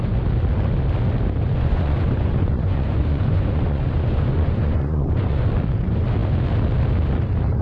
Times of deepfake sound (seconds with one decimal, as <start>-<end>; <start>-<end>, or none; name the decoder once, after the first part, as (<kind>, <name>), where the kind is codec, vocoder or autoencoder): 1.5-5.5 (vocoder, Vocos)